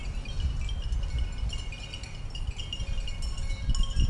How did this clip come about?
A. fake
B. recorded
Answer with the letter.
B